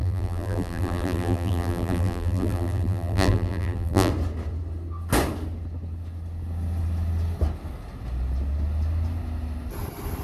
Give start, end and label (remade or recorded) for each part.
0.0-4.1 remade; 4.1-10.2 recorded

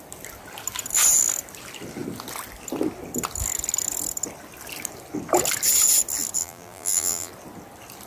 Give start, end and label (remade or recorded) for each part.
0.0-6.4 recorded; 6.4-7.3 remade; 7.3-8.1 recorded